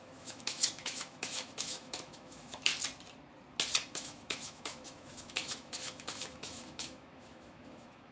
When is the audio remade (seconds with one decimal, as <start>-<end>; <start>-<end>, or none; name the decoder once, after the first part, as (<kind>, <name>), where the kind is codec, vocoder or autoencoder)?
0.0-2.7 (autoencoder, DAC-VAE); 3.9-8.1